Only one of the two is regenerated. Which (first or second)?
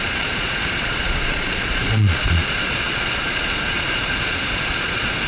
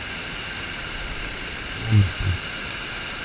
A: first